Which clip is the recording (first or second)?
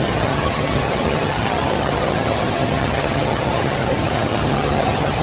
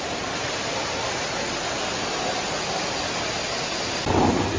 second